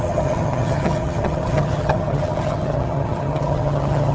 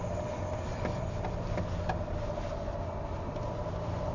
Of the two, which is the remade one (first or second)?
first